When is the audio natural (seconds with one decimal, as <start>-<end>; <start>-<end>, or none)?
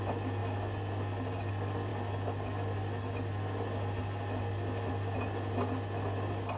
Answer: 0.0-6.6